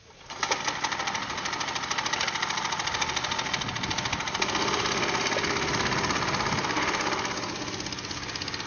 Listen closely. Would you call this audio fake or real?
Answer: real